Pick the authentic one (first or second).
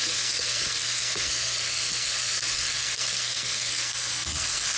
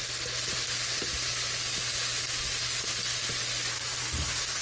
second